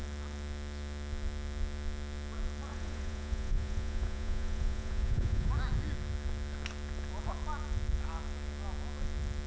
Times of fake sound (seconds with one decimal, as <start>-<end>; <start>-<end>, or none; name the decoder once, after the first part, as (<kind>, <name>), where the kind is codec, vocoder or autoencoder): 2.7-5.5 (vocoder, Vocos)